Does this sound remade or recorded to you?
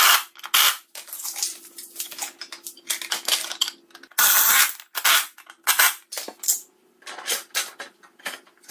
recorded